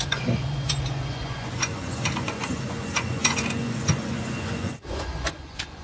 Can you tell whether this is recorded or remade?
remade